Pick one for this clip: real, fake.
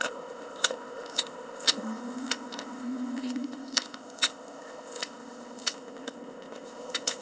fake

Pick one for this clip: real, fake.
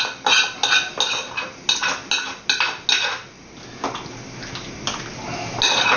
real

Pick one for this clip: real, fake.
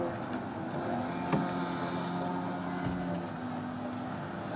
real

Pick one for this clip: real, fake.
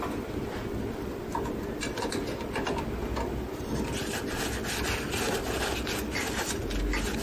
real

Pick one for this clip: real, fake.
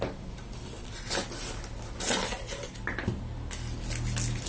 real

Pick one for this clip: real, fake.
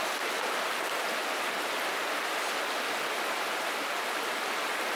real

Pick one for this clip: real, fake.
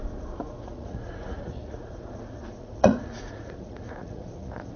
fake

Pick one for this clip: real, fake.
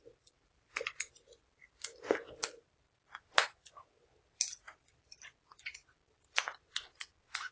real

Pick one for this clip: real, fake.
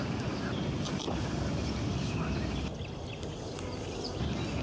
real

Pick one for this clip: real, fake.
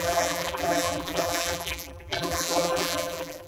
fake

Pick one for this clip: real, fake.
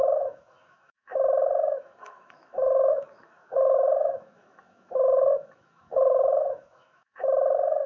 fake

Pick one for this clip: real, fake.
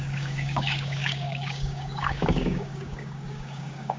fake